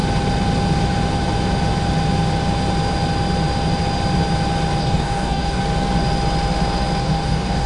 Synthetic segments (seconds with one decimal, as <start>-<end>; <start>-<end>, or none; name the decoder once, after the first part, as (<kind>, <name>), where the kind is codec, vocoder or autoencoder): 4.8-5.6 (codec, DAC); 7.0-7.7